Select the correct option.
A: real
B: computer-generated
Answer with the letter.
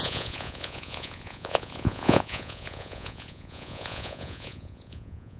B